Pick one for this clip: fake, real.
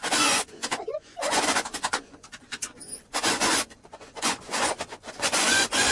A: fake